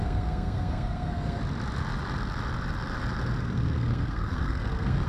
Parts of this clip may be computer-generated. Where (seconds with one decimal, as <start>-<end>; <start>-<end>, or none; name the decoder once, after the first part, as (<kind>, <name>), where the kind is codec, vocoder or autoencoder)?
0.0-1.4 (codec, SNAC); 3.4-5.1